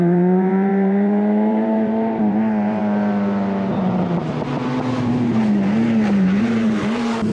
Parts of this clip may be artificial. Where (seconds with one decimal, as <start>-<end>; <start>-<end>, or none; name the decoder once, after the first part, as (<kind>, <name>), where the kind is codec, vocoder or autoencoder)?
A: 0.0-2.8 (vocoder, BigVGAN v2); 3.7-4.5; 6.4-7.3

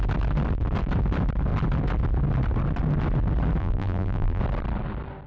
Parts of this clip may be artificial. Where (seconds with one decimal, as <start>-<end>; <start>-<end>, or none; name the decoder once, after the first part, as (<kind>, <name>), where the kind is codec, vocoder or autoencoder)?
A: 3.6-4.4 (vocoder, BigVGAN v2)

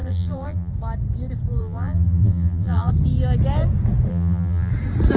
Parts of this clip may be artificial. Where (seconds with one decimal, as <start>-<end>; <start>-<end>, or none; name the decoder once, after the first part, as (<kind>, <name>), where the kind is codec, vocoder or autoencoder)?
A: 0.0-0.7 (vocoder, BigVGAN v2); 1.6-2.9; 4.1-4.7

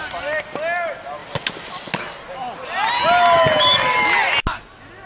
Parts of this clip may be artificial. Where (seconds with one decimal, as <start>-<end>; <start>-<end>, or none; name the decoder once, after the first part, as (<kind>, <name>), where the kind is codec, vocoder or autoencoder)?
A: none